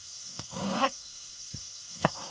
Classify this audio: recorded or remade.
remade